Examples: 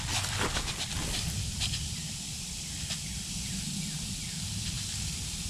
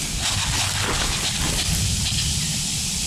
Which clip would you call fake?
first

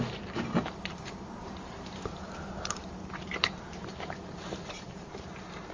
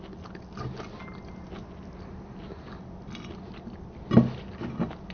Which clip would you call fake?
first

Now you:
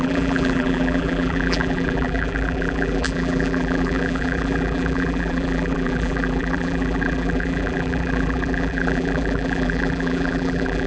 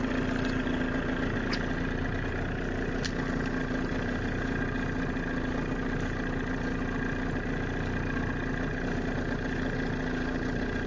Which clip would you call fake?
first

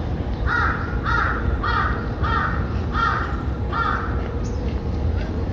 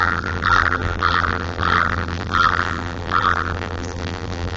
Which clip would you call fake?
second